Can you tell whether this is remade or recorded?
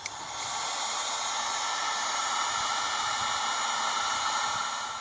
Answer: recorded